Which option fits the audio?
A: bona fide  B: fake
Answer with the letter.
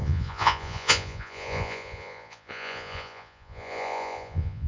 B